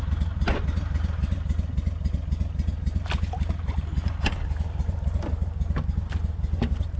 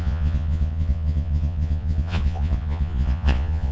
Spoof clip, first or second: second